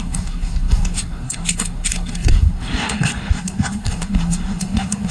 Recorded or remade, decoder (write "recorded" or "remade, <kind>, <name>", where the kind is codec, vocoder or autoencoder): remade, codec, SNAC